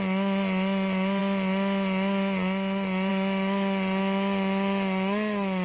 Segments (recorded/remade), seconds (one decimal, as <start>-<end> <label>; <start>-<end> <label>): 0.0-5.6 recorded